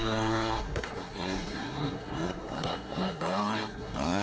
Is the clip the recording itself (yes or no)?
no